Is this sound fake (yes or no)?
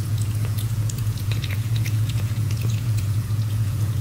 yes